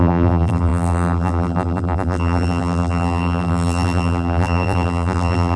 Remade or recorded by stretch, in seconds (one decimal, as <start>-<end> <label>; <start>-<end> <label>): 0.0-5.6 remade